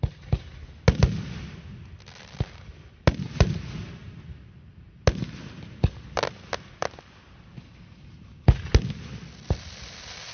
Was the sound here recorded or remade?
recorded